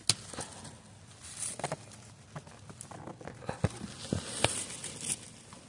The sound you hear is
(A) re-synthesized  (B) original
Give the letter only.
B